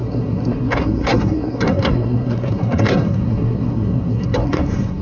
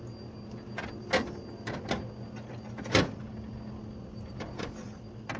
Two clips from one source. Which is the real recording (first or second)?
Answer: second